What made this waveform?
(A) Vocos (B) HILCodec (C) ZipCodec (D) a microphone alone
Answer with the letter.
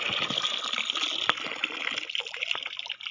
D